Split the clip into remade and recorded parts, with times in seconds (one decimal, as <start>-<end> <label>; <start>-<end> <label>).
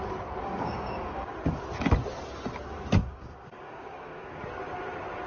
0.0-0.4 recorded; 0.4-1.3 remade; 1.3-3.0 recorded; 3.0-4.4 remade; 4.4-5.3 recorded